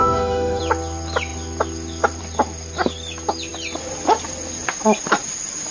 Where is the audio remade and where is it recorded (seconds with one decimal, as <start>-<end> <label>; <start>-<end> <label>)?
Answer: 0.0-0.6 remade; 0.6-5.7 recorded